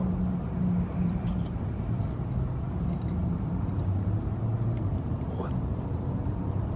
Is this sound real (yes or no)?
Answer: no